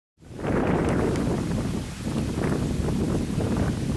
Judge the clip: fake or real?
real